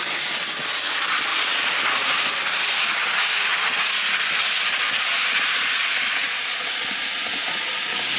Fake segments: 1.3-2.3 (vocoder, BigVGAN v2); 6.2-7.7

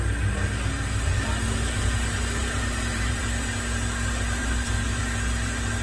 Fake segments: 2.4-3.2 (vocoder, BigVGAN v2); 4.4-5.0

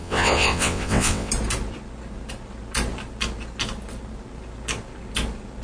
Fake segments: 0.0-1.3 (vocoder, WaveNeXt)

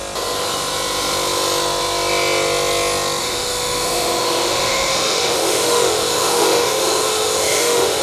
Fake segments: 3.2-8.0 (autoencoder, DAC-VAE)

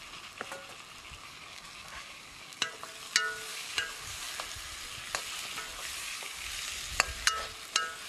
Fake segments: 1.2-2.7 (codec, DAC); 3.5-4.3; 6.0-6.5

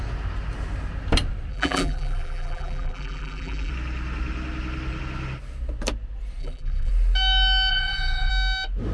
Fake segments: 1.5-3.7 (vocoder, BigVGAN v2); 6.4-6.9; 7.7-8.3